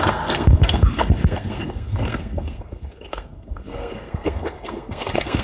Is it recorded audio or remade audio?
remade